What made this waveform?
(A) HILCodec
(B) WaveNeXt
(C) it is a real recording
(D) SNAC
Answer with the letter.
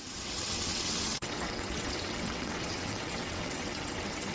B